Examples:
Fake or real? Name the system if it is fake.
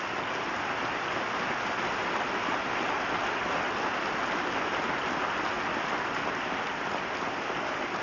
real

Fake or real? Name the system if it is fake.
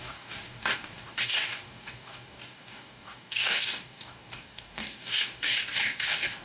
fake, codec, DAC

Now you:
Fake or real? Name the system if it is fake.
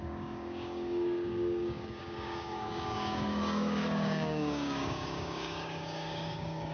fake, codec, DAC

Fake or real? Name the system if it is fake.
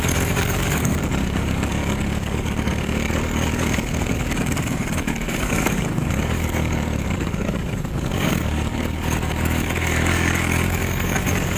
fake, codec, DAC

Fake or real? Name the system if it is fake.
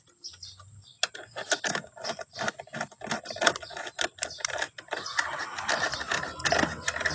real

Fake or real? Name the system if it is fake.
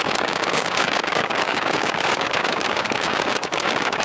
fake, codec, DAC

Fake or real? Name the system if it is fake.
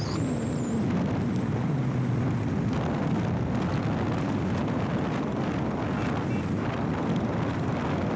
real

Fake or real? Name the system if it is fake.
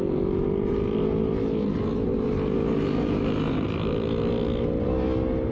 real